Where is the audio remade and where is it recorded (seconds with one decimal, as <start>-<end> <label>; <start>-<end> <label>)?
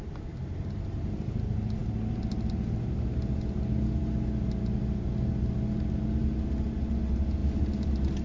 0.0-8.2 recorded